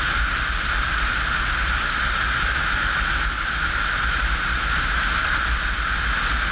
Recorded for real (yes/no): yes